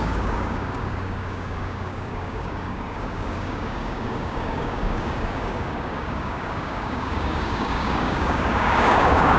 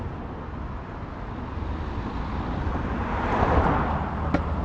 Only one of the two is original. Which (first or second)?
second